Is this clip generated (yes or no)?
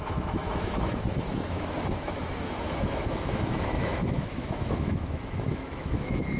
yes